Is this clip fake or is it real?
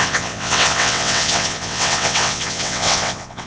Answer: fake